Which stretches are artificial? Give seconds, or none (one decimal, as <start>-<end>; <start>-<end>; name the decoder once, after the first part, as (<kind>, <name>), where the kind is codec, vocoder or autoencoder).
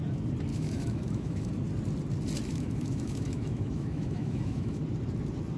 0.5-1.5 (autoencoder, DAC-VAE); 2.5-4.8